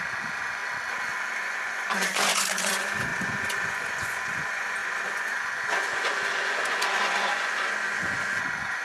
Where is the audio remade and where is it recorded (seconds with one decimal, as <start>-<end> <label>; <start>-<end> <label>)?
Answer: 0.0-0.6 remade; 0.6-1.4 recorded; 1.4-8.8 remade